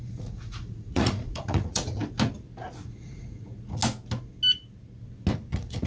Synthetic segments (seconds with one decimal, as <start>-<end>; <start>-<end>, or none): 0.0-2.0; 2.8-3.8; 5.5-5.9

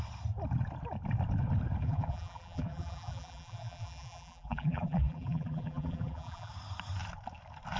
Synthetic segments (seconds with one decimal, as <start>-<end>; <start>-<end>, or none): 1.8-6.5

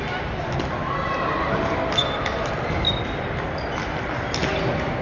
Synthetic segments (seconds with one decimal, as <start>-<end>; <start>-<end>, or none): none

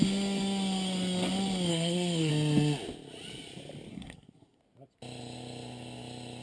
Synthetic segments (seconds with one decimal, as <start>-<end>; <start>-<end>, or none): 1.7-2.3; 3.9-4.6

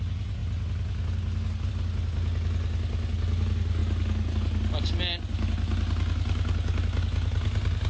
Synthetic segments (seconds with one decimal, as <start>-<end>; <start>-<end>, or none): none

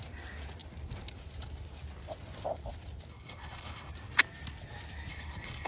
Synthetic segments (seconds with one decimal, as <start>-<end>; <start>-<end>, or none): 3.1-3.9; 5.1-5.7